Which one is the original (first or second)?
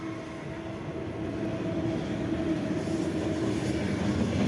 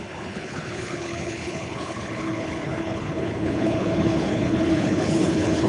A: first